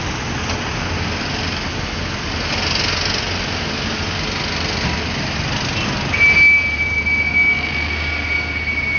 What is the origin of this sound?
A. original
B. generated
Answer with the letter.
A